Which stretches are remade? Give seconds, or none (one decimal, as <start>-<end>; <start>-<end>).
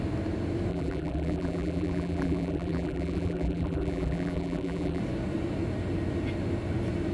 0.7-5.0